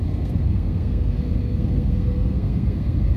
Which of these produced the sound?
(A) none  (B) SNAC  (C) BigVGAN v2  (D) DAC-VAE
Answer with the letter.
B